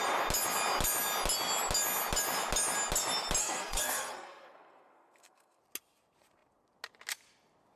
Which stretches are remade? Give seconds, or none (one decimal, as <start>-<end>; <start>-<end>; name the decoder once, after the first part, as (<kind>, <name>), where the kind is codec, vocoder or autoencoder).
3.4-5.6 (codec, SNAC)